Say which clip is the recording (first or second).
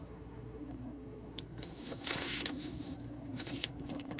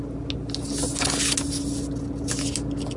second